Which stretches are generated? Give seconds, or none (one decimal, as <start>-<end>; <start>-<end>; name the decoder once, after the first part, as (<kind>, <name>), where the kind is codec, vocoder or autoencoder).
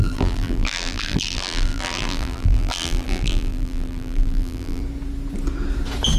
0.0-4.8 (vocoder, BigVGAN v2)